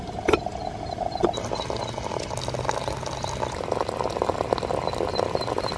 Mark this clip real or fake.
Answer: real